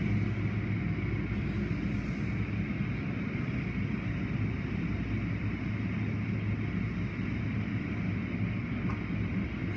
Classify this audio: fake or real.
real